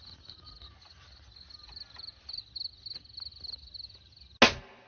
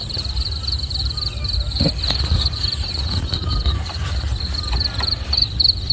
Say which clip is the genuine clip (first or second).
first